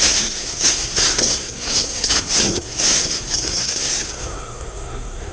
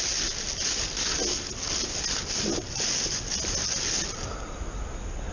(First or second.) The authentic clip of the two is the second